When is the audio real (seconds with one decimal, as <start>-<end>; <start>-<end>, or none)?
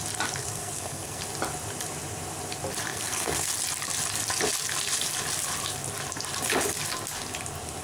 0.0-0.4; 1.2-2.9; 3.5-7.8